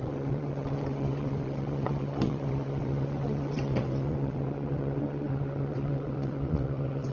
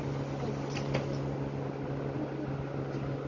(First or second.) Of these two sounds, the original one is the second